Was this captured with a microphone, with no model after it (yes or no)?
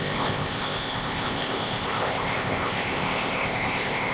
no